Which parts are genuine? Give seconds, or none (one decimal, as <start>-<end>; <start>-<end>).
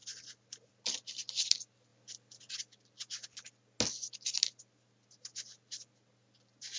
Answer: 0.0-6.8